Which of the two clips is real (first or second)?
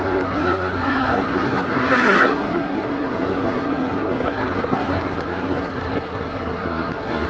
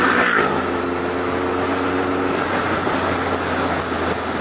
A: second